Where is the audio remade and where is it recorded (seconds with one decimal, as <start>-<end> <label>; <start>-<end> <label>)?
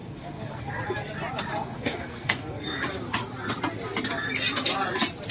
0.0-0.7 remade; 0.7-1.5 recorded; 1.5-2.6 remade; 2.6-5.3 recorded